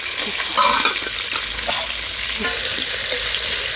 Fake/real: real